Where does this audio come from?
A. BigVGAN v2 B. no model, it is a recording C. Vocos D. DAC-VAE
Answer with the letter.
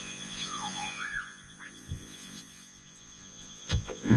C